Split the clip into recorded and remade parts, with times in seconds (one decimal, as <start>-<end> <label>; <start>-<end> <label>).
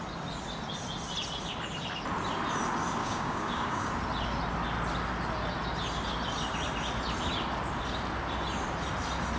0.0-3.0 recorded; 3.0-3.9 remade; 3.9-9.4 recorded